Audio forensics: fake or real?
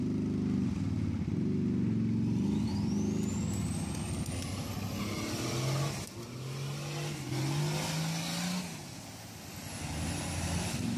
real